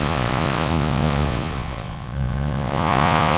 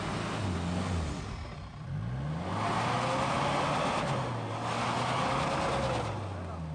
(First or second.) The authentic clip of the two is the second